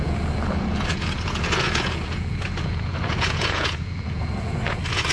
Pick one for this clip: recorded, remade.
remade